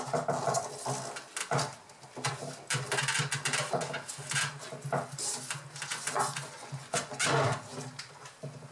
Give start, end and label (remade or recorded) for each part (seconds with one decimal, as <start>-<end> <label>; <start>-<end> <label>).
0.0-5.9 recorded; 5.9-7.2 remade; 7.2-8.7 recorded